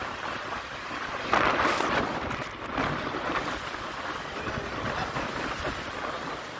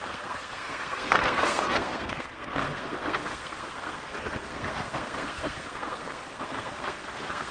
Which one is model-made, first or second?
second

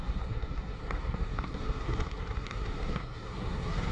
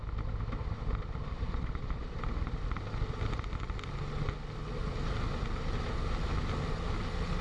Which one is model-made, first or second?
first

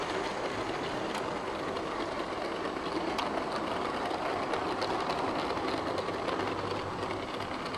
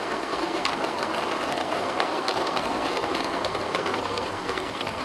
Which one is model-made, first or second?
second